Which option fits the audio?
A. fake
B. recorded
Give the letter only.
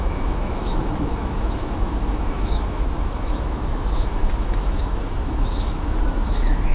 A